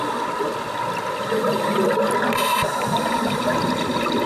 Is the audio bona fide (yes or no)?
yes